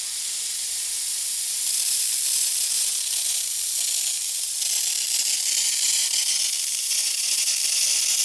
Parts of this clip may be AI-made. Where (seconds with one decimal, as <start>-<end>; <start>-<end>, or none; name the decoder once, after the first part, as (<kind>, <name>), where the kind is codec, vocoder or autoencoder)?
6.8-7.5 (vocoder, Vocos)